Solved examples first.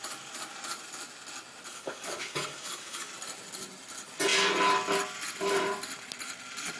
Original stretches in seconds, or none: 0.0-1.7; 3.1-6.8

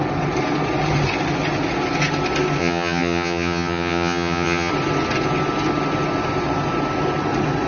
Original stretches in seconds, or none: 0.0-2.6; 4.7-7.7

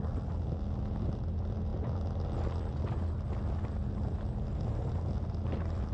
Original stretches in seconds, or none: 0.0-5.9

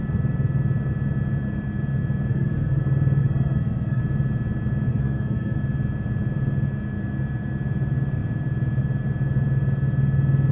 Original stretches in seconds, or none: 0.0-2.3; 2.8-3.2; 4.0-4.9; 5.6-10.5

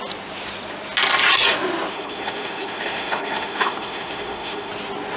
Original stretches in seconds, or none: 0.0-1.9; 4.7-5.2

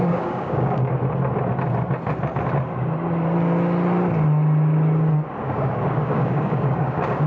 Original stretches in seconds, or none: 1.0-5.4

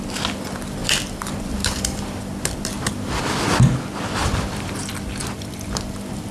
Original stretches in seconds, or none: 0.0-0.8; 3.2-4.2